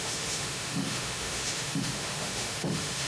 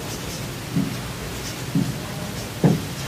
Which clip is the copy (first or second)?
first